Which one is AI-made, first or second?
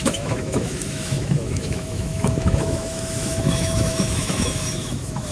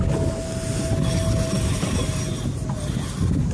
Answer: first